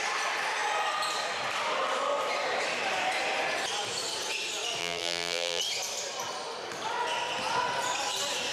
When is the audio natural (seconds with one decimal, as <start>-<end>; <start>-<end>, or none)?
0.0-4.8; 5.6-8.5